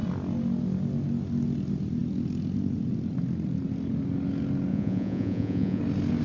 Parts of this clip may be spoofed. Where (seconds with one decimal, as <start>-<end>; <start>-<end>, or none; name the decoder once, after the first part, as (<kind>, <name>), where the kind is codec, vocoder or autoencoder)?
4.7-5.8 (vocoder, Vocos)